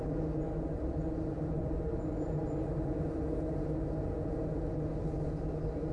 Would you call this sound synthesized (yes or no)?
no